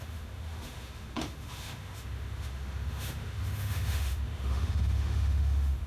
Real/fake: fake